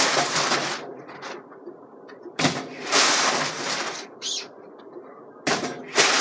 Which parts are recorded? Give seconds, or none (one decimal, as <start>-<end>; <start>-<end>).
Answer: 0.0-0.9; 4.6-6.2